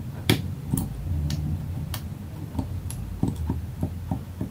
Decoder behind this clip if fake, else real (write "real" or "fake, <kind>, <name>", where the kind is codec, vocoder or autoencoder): fake, vocoder, BigVGAN v2